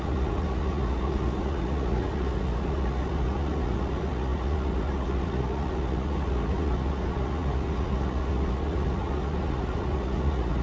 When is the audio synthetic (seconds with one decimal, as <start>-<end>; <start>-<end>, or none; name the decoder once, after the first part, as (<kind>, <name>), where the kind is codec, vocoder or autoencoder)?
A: 0.0-10.6 (vocoder, Vocos)